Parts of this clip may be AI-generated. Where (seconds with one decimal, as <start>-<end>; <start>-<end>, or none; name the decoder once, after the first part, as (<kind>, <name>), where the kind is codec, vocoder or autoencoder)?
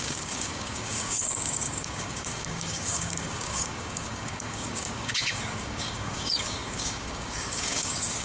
0.0-8.2 (codec, DAC)